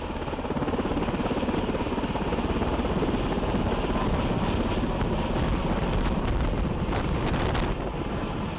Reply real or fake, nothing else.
real